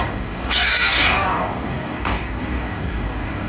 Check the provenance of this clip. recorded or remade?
remade